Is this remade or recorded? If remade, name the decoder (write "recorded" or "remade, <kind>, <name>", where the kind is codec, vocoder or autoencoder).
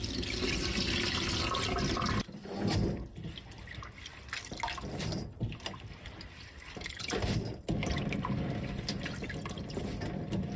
recorded